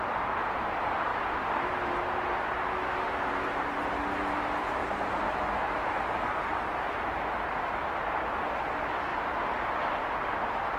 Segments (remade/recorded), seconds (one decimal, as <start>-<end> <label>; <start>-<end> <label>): 0.0-1.1 recorded; 1.1-1.9 remade; 1.9-10.8 recorded